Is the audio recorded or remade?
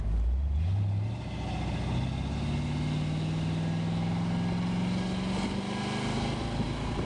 recorded